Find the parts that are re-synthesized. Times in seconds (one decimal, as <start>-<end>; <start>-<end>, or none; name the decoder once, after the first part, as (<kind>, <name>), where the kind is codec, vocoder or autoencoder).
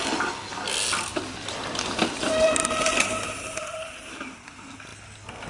1.1-4.4 (vocoder, BigVGAN v2)